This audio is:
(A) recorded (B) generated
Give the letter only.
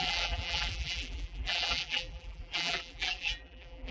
B